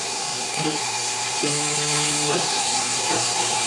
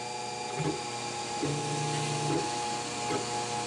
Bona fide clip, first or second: second